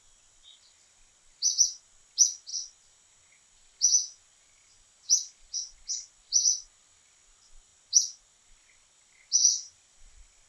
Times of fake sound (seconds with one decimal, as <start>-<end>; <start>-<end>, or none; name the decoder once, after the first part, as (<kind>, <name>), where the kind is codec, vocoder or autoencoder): none